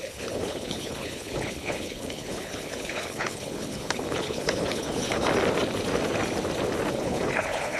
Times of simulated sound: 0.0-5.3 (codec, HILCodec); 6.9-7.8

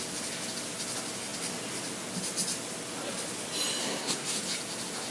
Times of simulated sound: 3.8-4.4 (codec, SNAC)

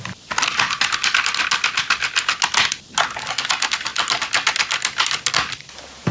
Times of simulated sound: none

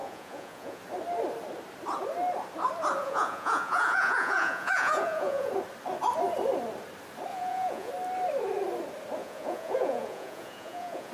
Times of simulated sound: 0.0-0.8 (vocoder, Vocos); 3.0-5.5; 7.3-7.9; 9.2-11.1

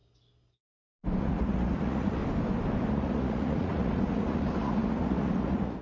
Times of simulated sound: 1.2-2.2 (vocoder, Vocos); 2.9-5.8